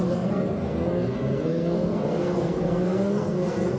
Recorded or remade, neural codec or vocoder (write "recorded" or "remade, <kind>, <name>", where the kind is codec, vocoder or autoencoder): remade, codec, SNAC